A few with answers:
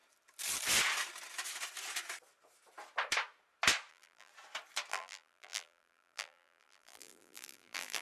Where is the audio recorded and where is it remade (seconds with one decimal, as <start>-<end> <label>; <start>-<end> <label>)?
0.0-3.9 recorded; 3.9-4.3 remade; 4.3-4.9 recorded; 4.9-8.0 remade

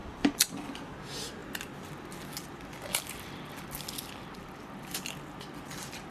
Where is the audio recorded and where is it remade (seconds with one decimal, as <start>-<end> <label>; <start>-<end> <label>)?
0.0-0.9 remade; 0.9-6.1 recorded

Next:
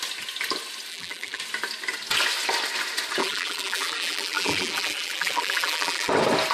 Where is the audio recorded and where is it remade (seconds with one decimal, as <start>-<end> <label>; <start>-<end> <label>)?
0.0-0.9 recorded; 0.9-1.4 remade; 1.4-3.2 recorded; 3.2-6.1 remade; 6.1-6.5 recorded

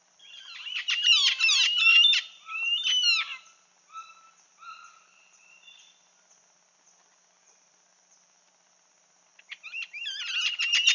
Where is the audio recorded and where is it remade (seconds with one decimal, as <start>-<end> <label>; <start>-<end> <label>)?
0.0-1.9 recorded; 1.9-2.9 remade; 2.9-9.3 recorded; 9.3-10.2 remade; 10.2-10.9 recorded